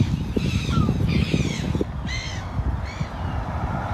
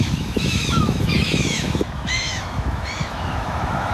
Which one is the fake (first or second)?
second